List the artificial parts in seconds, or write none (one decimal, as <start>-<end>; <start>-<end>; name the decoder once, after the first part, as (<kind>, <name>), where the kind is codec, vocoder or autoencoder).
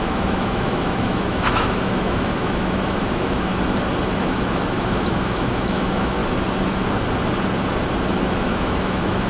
0.0-3.5 (autoencoder, DAC-VAE); 4.2-6.2; 8.2-9.3